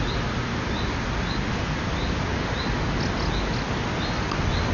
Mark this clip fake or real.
real